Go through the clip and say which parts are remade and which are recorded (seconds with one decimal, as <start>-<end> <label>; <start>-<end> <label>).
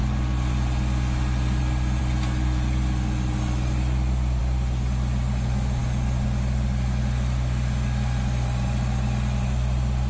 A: 0.0-10.1 recorded